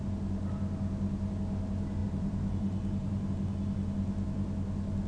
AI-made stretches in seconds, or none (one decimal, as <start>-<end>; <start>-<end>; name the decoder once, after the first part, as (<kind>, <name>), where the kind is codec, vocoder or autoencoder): 2.0-3.3 (vocoder, BigVGAN v2)